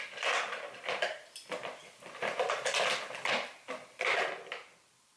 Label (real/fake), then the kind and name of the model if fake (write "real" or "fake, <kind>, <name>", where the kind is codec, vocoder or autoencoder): real